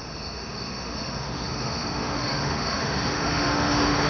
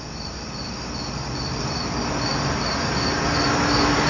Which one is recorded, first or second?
second